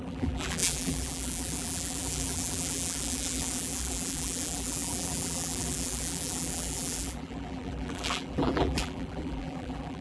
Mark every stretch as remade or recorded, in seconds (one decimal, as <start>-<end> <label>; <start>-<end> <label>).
0.0-10.0 remade